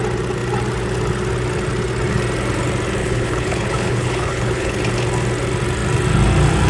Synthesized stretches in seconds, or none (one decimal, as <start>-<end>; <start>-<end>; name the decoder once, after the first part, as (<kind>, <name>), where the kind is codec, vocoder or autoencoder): 3.0-4.8 (codec, HILCodec)